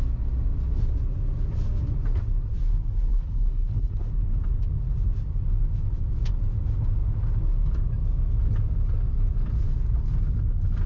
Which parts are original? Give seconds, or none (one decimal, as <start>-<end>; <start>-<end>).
0.0-3.1; 4.1-10.9